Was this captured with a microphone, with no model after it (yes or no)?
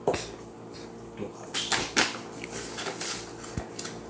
yes